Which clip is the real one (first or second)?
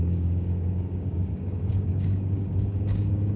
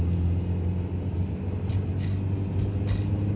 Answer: second